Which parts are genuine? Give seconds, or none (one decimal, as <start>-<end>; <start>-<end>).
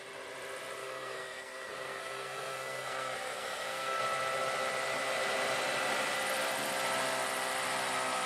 0.0-0.8; 4.0-8.3